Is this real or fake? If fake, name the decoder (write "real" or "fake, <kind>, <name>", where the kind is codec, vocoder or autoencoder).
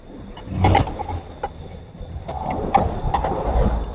real